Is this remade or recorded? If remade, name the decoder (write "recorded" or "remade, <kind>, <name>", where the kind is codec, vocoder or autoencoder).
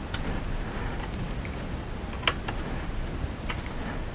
recorded